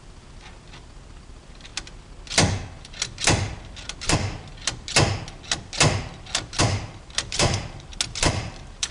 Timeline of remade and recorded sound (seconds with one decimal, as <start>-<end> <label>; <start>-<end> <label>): 0.0-1.7 remade; 1.7-6.6 recorded; 6.6-7.9 remade; 7.9-8.4 recorded; 8.4-8.9 remade